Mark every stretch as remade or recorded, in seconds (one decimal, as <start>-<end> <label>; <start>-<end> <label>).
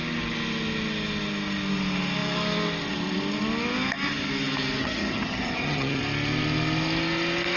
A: 0.0-4.8 recorded; 4.8-6.0 remade; 6.0-7.6 recorded